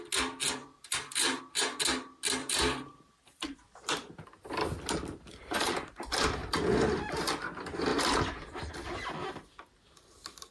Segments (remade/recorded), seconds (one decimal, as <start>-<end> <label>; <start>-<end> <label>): 0.0-0.6 recorded; 0.6-1.4 remade; 1.4-2.4 recorded; 2.4-3.2 remade; 3.2-7.9 recorded; 7.9-8.7 remade; 8.7-10.5 recorded